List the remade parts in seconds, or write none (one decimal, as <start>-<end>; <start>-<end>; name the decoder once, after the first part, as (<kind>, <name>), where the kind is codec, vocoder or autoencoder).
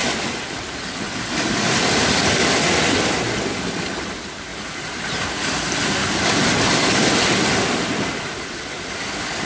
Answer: none